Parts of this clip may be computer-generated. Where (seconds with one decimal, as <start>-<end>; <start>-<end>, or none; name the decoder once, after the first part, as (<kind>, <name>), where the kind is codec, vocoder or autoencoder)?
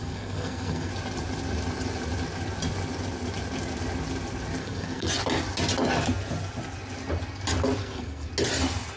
0.0-0.9 (codec, SNAC); 4.6-5.1; 7.8-8.3